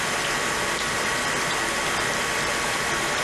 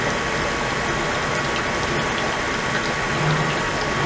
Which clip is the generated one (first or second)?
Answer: first